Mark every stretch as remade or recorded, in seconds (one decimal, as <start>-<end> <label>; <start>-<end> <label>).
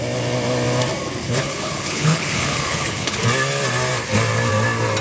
0.0-1.2 recorded; 1.2-3.2 remade; 3.2-5.0 recorded